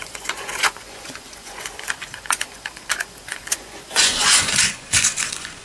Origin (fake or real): fake